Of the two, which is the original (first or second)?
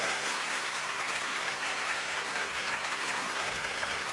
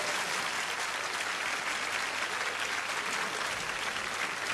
second